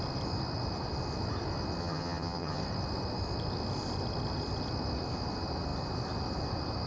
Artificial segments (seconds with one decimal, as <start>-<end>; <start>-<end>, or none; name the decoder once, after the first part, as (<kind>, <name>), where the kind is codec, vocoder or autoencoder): 1.8-2.6 (vocoder, HiFi-GAN)